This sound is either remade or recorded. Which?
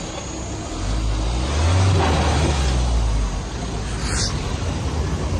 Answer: recorded